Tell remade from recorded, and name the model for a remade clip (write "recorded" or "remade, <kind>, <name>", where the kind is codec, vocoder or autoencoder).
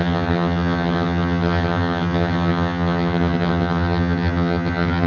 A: remade, vocoder, HiFi-GAN